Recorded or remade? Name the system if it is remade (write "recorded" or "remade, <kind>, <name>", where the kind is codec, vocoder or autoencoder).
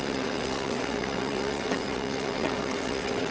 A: remade, vocoder, WaveNeXt